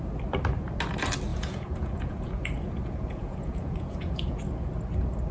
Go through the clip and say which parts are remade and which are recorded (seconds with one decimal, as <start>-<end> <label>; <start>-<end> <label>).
0.0-1.3 recorded; 1.3-4.4 remade; 4.4-5.3 recorded